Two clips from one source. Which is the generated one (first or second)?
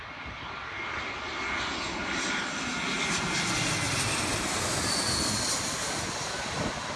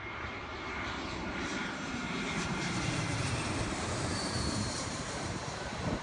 second